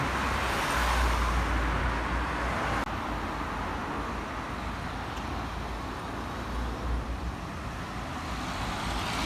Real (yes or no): yes